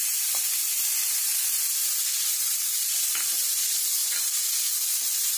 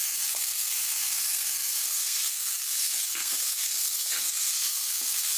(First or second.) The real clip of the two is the first